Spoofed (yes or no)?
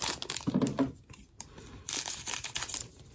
no